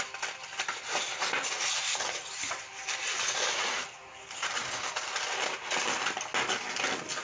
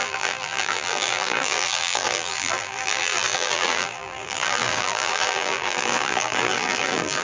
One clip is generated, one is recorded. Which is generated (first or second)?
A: second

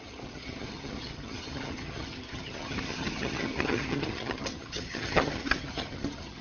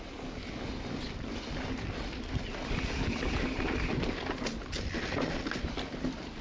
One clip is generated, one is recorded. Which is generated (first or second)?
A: first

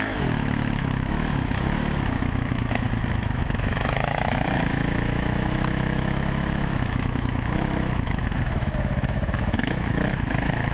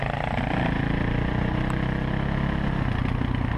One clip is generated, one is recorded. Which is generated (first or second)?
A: first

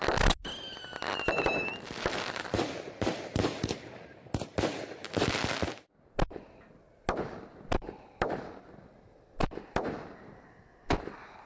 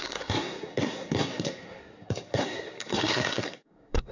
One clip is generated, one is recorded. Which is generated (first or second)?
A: second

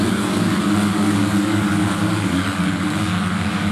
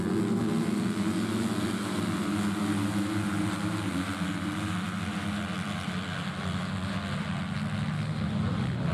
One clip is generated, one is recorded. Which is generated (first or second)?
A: first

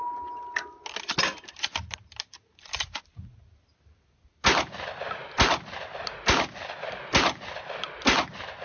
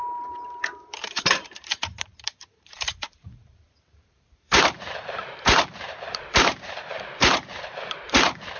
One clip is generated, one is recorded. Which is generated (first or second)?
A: second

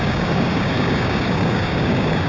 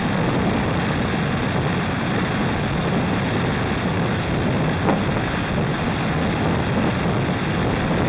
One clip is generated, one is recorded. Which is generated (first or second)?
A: first